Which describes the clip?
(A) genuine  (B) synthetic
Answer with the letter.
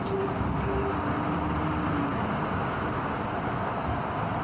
A